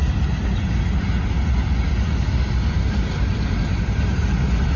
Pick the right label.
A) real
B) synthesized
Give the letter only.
A